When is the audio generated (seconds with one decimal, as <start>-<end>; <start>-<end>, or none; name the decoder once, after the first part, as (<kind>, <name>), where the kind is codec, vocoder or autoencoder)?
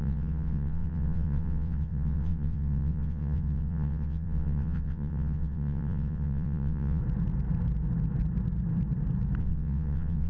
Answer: 0.0-7.0 (vocoder, WaveNeXt); 9.4-10.3